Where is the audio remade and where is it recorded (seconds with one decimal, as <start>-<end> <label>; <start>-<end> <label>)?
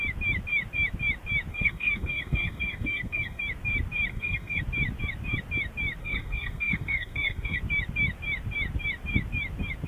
0.0-1.5 recorded; 1.5-3.4 remade; 3.4-4.1 recorded; 4.1-4.6 remade; 4.6-6.0 recorded; 6.0-7.6 remade; 7.6-9.9 recorded